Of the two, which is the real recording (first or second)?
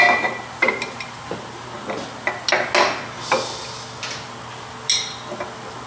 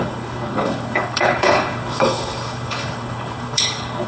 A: first